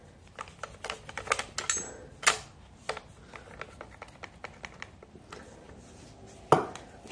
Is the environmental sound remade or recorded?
recorded